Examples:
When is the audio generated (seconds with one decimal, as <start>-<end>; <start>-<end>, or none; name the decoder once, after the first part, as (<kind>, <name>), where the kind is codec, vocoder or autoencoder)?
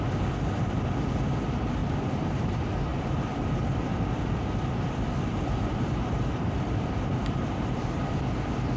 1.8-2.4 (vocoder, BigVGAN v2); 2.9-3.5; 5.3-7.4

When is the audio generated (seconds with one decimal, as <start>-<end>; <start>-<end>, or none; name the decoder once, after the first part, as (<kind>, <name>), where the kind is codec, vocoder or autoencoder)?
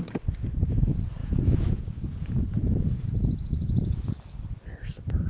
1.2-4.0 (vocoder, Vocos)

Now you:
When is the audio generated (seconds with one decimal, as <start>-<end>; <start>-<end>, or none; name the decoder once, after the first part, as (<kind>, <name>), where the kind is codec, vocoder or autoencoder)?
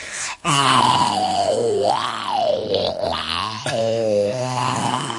0.0-1.9 (codec, SNAC); 3.8-5.2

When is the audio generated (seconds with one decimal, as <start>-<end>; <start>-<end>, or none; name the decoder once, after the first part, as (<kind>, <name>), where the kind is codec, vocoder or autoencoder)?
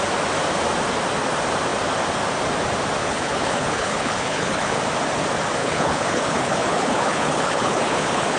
3.0-4.8 (codec, HILCodec); 5.6-8.4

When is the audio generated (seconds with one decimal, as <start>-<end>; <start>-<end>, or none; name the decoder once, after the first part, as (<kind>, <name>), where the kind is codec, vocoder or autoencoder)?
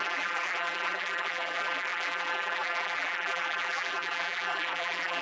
0.0-5.2 (vocoder, BigVGAN v2)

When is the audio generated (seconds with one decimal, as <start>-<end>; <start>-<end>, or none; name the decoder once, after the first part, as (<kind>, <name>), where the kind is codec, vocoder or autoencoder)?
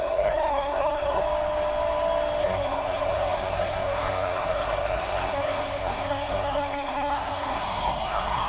0.0-1.2 (codec, SNAC); 2.4-8.5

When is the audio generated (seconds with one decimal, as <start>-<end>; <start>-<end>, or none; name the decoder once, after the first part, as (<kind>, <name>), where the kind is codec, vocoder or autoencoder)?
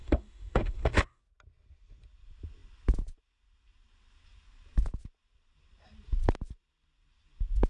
0.0-1.2 (autoencoder, DAC-VAE)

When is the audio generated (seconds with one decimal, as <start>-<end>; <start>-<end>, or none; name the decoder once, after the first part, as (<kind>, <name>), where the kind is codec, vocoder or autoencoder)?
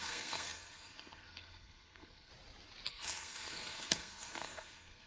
0.0-2.3 (codec, SNAC); 2.9-5.1